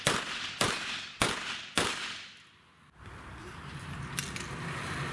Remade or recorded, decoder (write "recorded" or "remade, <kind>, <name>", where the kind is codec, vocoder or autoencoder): recorded